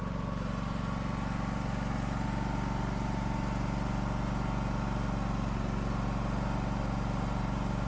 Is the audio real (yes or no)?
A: yes